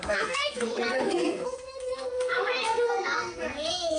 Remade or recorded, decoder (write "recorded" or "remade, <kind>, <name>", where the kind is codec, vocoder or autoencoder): remade, codec, SNAC